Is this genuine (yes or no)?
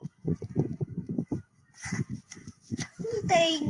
no